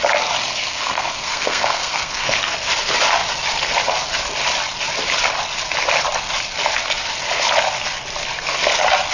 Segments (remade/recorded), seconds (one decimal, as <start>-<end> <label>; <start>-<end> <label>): 0.0-0.6 recorded; 0.6-2.4 remade; 2.4-9.1 recorded